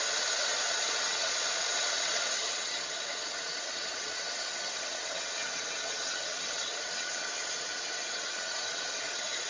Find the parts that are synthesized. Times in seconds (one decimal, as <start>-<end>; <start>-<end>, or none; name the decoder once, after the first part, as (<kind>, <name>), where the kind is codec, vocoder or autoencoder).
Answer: 0.0-9.5 (vocoder, WaveNeXt)